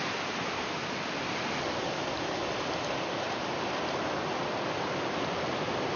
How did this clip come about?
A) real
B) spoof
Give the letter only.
A